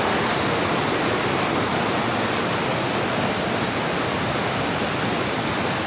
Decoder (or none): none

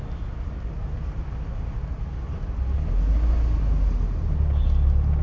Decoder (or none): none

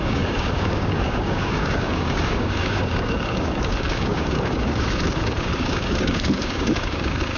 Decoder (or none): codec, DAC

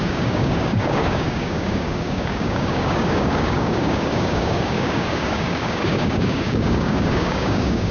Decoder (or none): codec, DAC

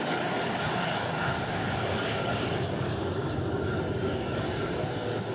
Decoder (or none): codec, DAC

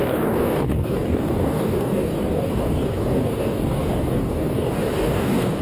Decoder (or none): codec, DAC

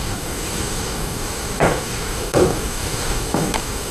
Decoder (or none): codec, DAC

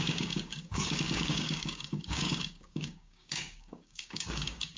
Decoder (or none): codec, DAC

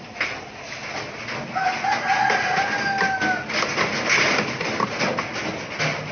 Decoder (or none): none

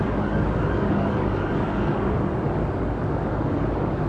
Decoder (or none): codec, DAC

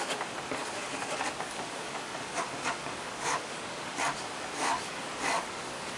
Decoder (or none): codec, DAC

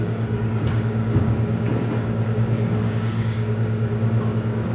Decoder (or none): codec, DAC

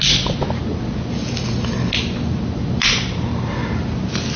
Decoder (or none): none